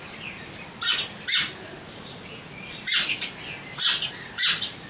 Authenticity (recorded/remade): recorded